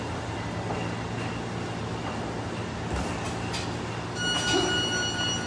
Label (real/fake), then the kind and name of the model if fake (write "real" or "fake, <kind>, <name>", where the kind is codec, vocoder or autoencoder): real